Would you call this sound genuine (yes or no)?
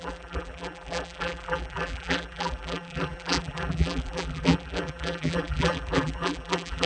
no